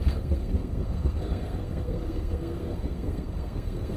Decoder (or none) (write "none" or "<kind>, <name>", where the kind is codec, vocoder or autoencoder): codec, SNAC